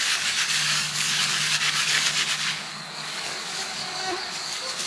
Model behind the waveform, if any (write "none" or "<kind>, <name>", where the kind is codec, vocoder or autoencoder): codec, DAC